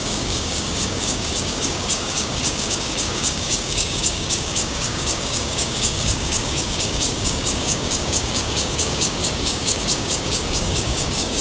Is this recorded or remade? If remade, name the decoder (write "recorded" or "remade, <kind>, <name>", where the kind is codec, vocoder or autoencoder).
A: remade, codec, DAC